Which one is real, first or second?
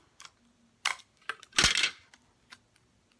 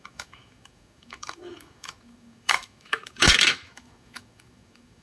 first